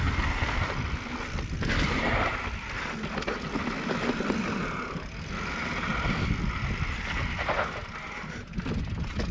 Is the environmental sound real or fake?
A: real